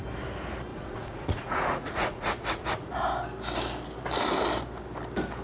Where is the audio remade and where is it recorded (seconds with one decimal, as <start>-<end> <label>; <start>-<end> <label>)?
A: 0.0-0.7 recorded; 0.7-2.9 remade; 2.9-5.4 recorded